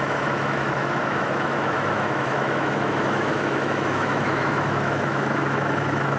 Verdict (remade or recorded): remade